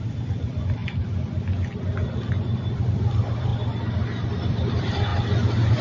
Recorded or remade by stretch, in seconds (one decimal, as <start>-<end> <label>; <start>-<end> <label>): 0.0-0.8 remade; 0.8-2.3 recorded; 2.3-3.5 remade; 3.5-4.4 recorded; 4.4-5.1 remade; 5.1-5.8 recorded